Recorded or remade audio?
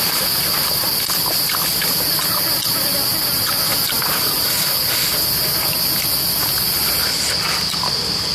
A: recorded